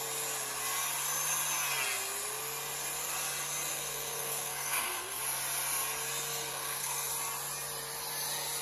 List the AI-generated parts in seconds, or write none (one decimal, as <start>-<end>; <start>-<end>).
3.7-5.2; 6.3-7.1